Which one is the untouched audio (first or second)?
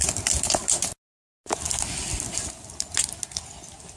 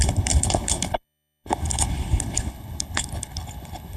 first